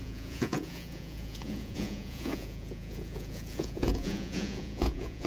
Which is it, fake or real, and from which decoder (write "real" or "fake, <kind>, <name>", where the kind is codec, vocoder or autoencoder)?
fake, vocoder, Vocos